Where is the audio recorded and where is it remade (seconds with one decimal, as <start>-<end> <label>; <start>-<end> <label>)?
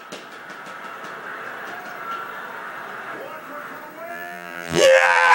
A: 0.0-4.1 recorded; 4.1-5.3 remade